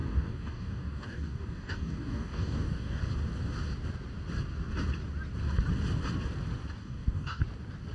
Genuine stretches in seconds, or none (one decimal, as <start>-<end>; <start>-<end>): 3.0-6.8; 7.4-7.9